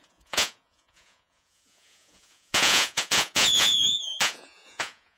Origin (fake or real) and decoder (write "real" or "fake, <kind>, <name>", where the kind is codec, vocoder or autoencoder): fake, vocoder, Vocos